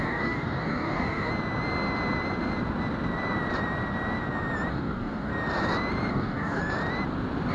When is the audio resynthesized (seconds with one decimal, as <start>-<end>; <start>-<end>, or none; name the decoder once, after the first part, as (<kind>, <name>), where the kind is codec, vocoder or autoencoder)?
0.0-1.3 (codec, DAC); 4.7-5.3; 6.1-6.6

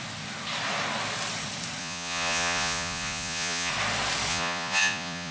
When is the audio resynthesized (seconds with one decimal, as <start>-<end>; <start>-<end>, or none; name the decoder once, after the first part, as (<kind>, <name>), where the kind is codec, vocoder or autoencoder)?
1.8-3.7 (vocoder, Vocos); 4.3-5.3

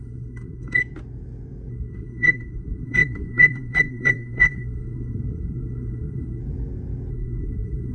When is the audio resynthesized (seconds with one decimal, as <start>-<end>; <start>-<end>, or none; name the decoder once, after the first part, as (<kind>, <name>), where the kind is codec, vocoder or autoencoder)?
0.0-0.8 (codec, SNAC); 1.7-6.4; 7.1-7.9

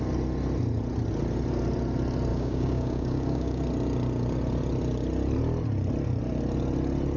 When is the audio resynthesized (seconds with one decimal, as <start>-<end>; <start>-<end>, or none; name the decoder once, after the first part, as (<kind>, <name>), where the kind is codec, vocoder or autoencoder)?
2.3-3.6 (codec, DAC)

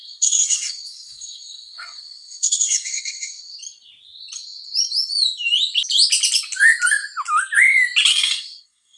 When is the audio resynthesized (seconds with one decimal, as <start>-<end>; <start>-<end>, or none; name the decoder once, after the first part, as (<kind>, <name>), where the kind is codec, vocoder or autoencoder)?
0.0-3.6 (codec, SNAC); 8.1-9.0